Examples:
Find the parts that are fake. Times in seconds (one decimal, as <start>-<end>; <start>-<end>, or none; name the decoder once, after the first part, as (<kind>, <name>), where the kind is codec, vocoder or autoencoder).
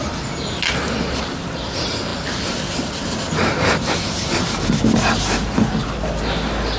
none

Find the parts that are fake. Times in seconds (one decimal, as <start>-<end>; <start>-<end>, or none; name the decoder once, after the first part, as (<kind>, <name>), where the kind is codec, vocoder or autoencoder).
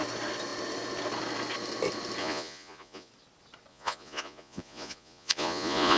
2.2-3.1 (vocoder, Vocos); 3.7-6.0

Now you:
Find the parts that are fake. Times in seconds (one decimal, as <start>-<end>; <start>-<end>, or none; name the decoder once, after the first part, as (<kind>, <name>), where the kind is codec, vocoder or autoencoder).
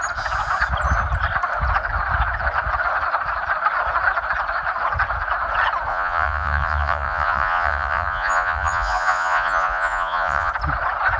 5.9-10.5 (vocoder, Vocos)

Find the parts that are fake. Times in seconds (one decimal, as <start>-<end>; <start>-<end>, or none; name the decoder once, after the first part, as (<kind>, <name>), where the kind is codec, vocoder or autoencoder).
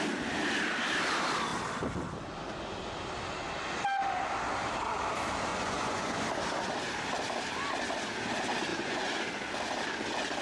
5.5-6.3 (vocoder, Vocos); 8.7-9.2